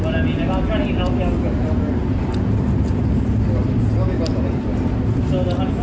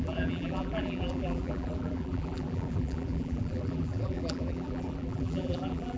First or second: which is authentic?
first